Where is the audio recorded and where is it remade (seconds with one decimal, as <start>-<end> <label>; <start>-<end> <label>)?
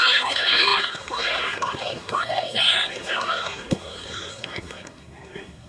0.0-5.7 remade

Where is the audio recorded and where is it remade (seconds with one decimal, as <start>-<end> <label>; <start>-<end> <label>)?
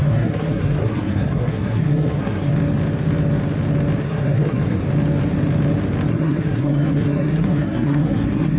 0.0-2.5 remade; 2.5-4.0 recorded; 4.0-4.8 remade; 4.8-6.1 recorded; 6.1-8.6 remade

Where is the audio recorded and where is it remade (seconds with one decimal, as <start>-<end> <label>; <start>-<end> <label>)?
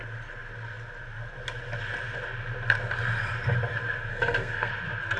0.0-4.1 recorded; 4.1-4.7 remade; 4.7-5.2 recorded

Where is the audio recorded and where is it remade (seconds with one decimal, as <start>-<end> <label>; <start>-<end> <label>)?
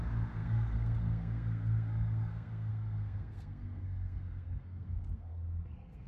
0.0-6.1 remade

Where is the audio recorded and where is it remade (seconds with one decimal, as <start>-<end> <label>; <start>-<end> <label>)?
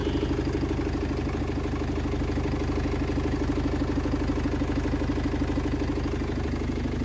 0.0-7.0 recorded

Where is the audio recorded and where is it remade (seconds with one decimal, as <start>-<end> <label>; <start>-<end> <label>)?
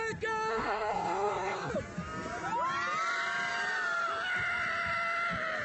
0.0-0.5 recorded; 0.5-1.7 remade; 1.7-5.6 recorded